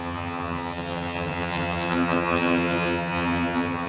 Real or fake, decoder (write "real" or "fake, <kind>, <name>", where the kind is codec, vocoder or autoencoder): fake, vocoder, HiFi-GAN